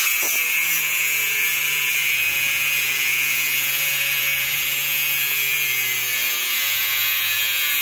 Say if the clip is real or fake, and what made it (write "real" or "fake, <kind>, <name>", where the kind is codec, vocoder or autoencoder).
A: fake, vocoder, Vocos